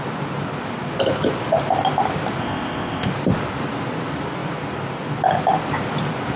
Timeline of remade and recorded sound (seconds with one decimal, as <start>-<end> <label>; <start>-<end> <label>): 0.0-2.4 recorded; 2.4-3.1 remade; 3.1-6.4 recorded